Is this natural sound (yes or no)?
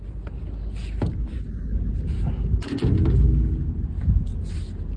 yes